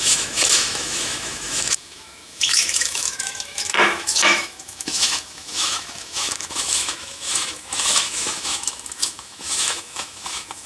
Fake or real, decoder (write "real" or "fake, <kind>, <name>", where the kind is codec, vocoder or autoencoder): fake, autoencoder, DAC-VAE